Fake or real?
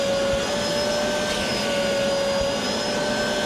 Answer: real